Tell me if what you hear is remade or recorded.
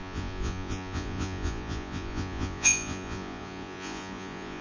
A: remade